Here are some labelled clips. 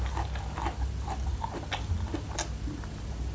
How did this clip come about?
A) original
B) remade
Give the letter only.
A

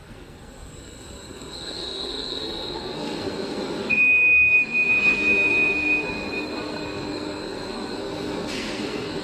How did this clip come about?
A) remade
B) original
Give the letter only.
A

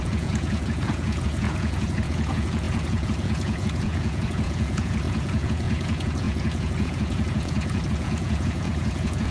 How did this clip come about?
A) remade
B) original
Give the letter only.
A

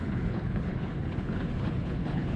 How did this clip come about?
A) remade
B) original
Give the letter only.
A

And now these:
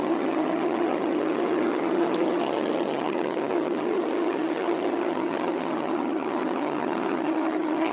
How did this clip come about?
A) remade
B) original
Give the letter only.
A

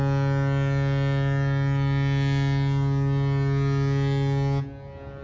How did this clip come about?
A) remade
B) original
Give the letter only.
B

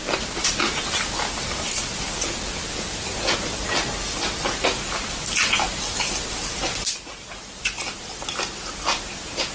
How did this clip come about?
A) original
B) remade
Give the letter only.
A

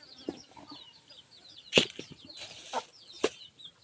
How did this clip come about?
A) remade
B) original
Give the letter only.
B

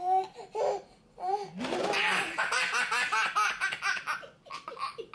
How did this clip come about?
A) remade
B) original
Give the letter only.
B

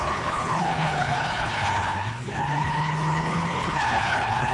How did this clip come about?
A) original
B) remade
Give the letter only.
B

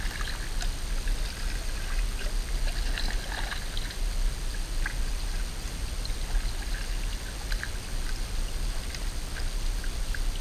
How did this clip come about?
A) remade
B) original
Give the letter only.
B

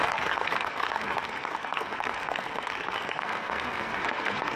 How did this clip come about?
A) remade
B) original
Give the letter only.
A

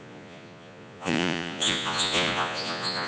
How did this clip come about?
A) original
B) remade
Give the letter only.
B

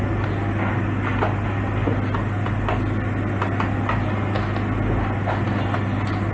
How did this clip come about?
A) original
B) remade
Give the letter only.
A